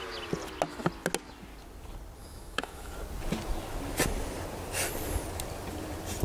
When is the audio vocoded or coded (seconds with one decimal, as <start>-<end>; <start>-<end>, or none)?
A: 2.2-2.9